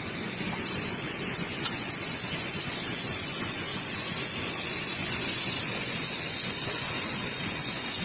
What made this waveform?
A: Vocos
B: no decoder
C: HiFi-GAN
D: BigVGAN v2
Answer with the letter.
A